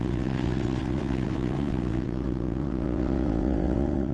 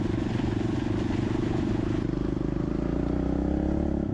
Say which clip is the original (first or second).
second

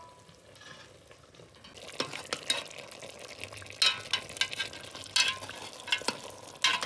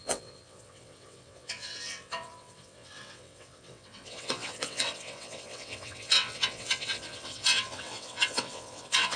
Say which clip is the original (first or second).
first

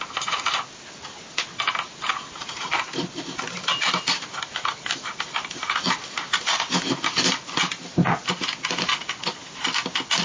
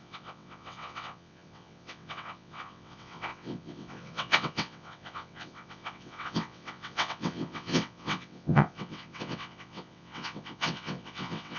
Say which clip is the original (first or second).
first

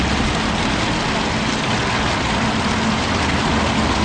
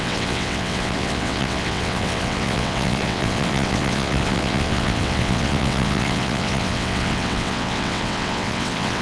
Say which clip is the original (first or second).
first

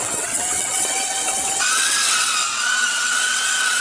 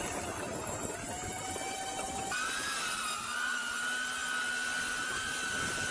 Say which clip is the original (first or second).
second